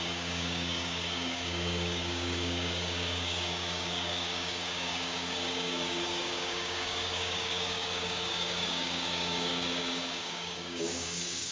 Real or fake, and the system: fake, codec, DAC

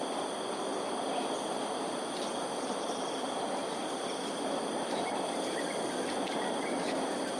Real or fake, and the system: real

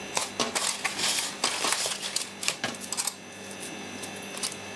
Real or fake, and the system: real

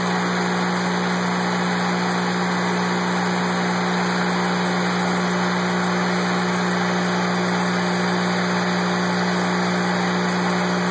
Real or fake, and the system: real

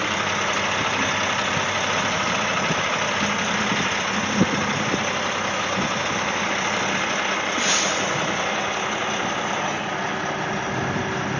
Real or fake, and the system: real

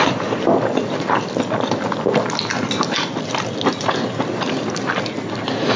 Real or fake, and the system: real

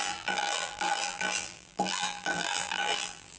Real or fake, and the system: fake, vocoder, BigVGAN v2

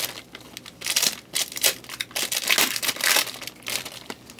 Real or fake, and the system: real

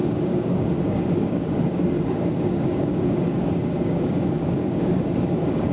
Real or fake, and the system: fake, codec, DAC